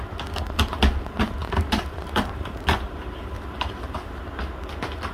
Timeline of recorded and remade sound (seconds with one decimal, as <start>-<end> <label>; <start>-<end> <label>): 0.0-1.4 recorded; 1.4-4.2 remade; 4.2-5.1 recorded